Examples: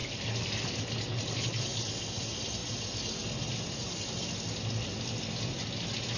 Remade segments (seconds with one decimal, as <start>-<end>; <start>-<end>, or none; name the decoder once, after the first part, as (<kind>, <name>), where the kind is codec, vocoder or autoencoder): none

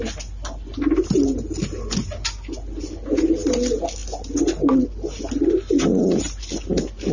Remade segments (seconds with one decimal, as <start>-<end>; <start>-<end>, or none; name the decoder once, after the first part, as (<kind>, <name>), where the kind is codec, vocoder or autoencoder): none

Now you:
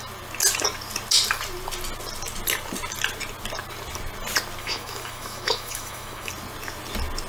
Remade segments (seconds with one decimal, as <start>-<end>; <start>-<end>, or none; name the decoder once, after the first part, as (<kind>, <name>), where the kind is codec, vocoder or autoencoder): 4.6-6.3 (autoencoder, DAC-VAE)

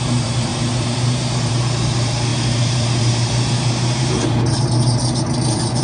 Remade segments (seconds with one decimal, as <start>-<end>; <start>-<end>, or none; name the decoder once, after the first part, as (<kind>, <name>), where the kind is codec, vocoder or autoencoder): 0.0-5.8 (vocoder, BigVGAN v2)

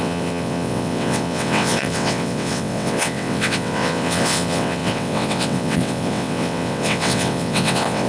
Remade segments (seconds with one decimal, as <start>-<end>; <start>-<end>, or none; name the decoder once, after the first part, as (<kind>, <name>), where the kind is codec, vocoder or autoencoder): 0.0-8.1 (vocoder, WaveNeXt)

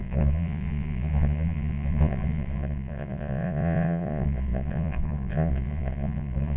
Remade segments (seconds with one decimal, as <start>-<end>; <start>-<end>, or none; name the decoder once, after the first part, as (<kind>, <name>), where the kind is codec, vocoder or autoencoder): 0.0-6.6 (vocoder, Vocos)